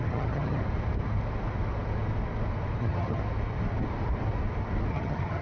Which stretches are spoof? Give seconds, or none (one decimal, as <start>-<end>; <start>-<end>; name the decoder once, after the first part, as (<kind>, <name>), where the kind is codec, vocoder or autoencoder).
0.0-0.6 (vocoder, HiFi-GAN); 2.8-3.2; 4.9-5.4